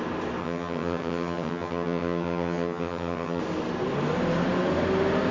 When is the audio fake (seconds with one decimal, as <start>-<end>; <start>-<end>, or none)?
0.4-3.4